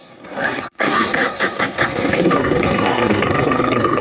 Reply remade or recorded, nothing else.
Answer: remade